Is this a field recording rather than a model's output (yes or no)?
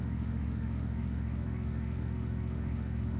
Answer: no